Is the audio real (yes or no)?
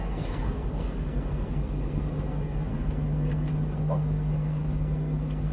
no